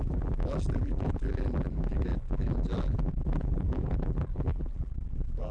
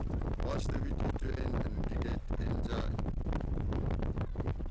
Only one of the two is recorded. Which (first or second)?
second